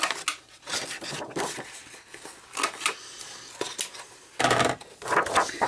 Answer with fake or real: real